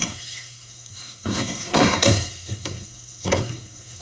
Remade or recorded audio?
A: remade